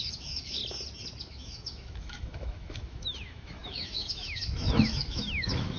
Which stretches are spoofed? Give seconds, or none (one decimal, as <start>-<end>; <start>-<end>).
0.0-0.6; 1.2-5.8